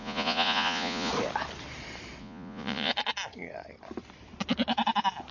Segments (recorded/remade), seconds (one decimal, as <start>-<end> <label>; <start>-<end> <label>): 0.0-1.1 remade; 1.1-2.2 recorded; 2.2-2.9 remade; 2.9-5.3 recorded